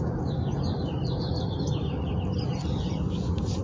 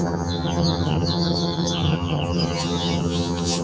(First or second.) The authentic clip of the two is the first